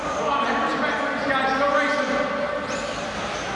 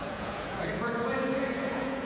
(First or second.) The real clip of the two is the first